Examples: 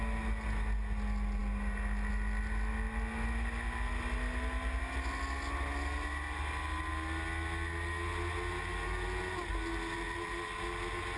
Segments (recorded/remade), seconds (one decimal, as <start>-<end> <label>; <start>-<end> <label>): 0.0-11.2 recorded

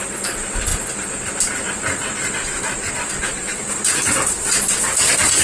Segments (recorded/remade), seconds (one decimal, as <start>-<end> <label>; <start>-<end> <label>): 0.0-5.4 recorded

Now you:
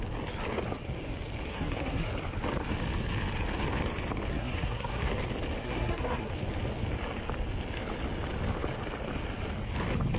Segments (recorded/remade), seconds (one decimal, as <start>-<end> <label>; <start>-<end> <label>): 0.0-1.5 recorded; 1.5-2.1 remade; 2.1-4.3 recorded; 4.3-5.1 remade; 5.1-5.6 recorded; 5.6-6.3 remade; 6.3-10.2 recorded